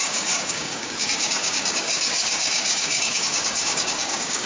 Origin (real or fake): fake